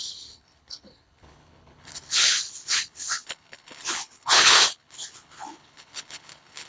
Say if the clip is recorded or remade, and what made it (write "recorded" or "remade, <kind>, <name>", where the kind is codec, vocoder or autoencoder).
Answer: remade, codec, HILCodec